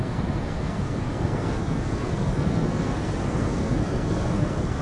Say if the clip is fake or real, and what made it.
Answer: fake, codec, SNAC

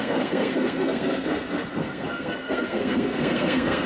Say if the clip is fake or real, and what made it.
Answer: fake, codec, SNAC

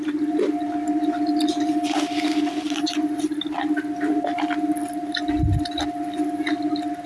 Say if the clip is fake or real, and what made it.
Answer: real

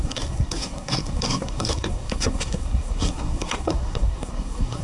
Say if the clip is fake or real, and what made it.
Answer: fake, codec, SNAC